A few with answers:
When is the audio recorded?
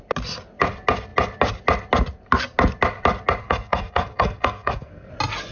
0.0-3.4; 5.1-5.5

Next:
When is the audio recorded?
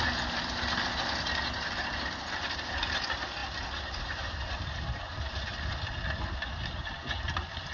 0.0-7.7